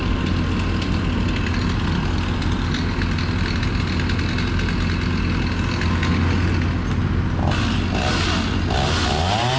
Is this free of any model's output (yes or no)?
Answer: yes